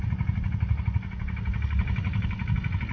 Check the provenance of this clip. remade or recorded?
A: recorded